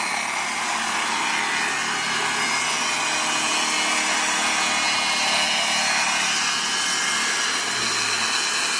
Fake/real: real